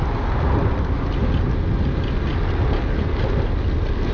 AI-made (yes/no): no